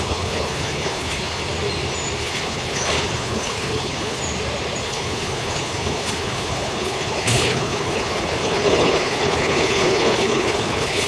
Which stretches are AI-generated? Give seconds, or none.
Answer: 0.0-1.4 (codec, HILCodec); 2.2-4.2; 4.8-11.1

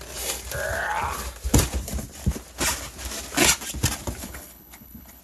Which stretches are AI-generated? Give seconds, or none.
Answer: 4.2-5.2 (codec, HILCodec)